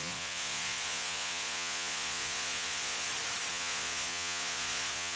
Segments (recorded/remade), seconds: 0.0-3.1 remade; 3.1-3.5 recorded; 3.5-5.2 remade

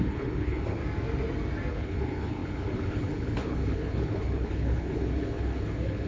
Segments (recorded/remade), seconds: 0.0-0.8 remade; 0.8-1.7 recorded; 1.7-6.1 remade

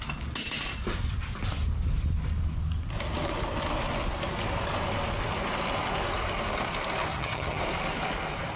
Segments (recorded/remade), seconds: 0.0-7.1 recorded; 7.1-7.6 remade; 7.6-8.6 recorded

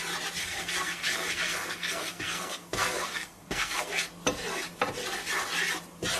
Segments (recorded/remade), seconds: 0.0-0.4 recorded; 0.4-4.1 remade; 4.1-6.2 recorded

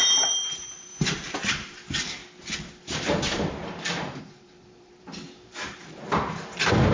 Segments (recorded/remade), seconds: 0.0-0.9 remade; 0.9-1.4 recorded; 1.4-2.2 remade; 2.2-4.2 recorded; 4.2-6.9 remade

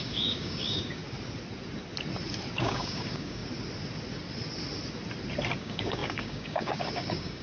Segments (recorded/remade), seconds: 0.0-1.0 remade; 1.0-2.6 recorded; 2.6-3.4 remade; 3.4-5.6 recorded; 5.6-7.4 remade